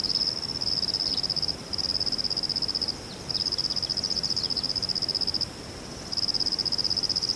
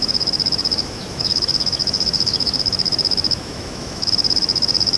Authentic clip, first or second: first